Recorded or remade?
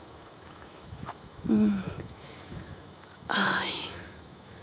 remade